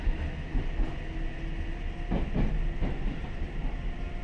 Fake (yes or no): no